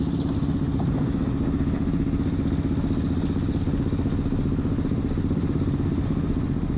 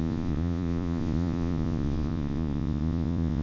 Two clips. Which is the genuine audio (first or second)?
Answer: first